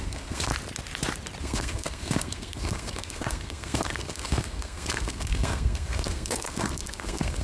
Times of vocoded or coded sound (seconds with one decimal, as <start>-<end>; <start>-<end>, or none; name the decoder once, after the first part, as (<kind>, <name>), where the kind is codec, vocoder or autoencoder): 0.0-0.5 (codec, SNAC); 1.4-7.4